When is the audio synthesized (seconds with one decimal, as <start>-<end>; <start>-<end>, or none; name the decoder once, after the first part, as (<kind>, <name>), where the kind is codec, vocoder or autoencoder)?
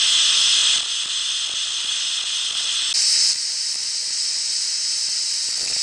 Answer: none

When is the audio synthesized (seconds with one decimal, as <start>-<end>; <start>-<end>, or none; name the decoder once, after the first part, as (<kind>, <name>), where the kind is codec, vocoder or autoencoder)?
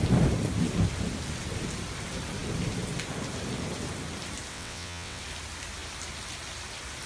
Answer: 4.5-5.2 (vocoder, WaveNeXt)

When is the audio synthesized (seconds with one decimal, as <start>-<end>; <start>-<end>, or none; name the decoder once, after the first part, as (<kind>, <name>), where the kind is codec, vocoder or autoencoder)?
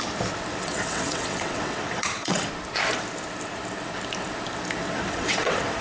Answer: 0.5-2.5 (vocoder, WaveNeXt); 4.8-5.8